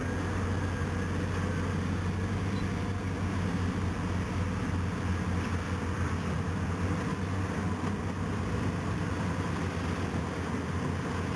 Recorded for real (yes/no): yes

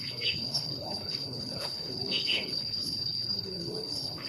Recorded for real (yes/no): no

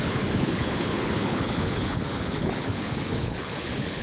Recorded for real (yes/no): no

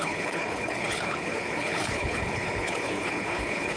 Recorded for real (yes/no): no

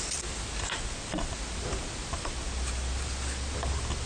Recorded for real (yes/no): yes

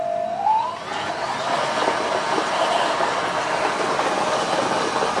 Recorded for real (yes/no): yes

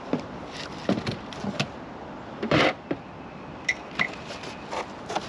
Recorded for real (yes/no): yes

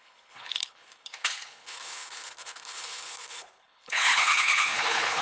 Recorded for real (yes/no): no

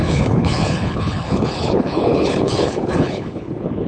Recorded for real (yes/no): no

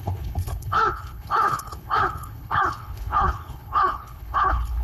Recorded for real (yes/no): no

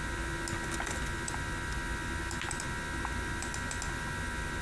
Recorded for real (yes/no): yes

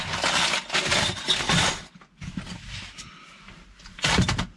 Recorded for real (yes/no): yes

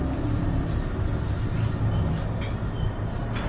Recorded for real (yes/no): yes